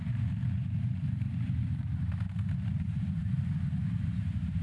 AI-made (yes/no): yes